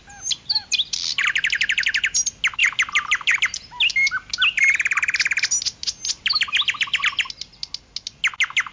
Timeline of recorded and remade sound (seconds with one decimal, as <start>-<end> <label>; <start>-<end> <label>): 0.0-2.6 recorded; 2.6-3.4 remade; 3.4-8.7 recorded